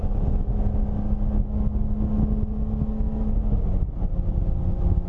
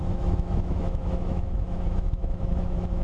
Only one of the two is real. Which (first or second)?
first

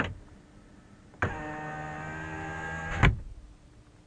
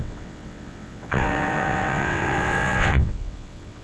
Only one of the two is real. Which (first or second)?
first